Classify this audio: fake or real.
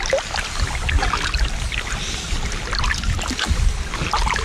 real